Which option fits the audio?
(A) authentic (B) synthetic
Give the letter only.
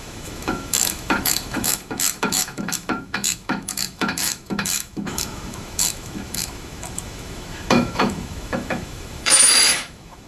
B